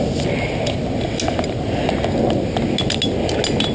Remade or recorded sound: recorded